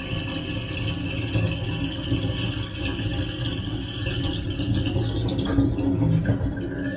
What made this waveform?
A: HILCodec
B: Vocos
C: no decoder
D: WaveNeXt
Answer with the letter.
C